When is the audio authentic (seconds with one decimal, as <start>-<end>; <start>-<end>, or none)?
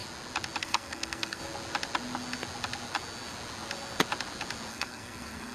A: 0.0-0.6; 1.4-4.7